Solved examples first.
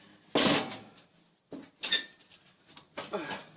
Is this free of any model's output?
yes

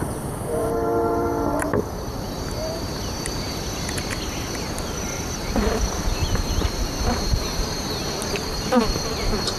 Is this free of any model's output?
no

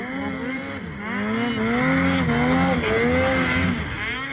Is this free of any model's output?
yes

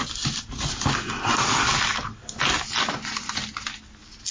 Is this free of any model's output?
yes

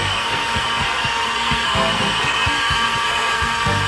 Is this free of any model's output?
no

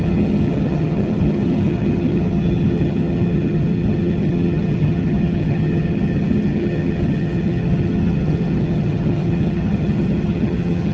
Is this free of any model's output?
no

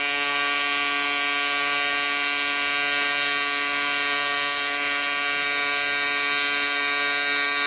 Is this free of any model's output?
yes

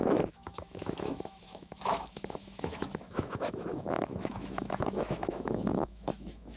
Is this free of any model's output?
no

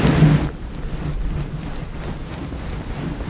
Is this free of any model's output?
yes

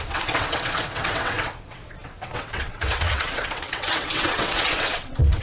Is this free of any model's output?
no